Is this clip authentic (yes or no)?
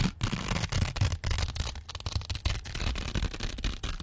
yes